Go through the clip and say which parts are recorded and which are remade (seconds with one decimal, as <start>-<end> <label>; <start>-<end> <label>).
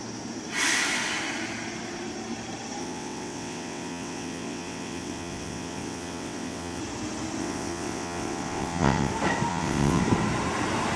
0.0-2.8 recorded; 2.8-6.8 remade; 6.8-7.4 recorded; 7.4-9.1 remade; 9.1-9.5 recorded; 9.5-10.0 remade; 10.0-11.0 recorded